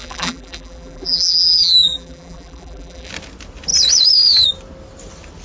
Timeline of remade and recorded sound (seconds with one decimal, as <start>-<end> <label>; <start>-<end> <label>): 0.0-3.1 remade; 3.1-5.4 recorded